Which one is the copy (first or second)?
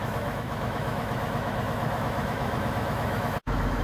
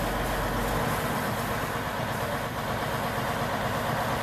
first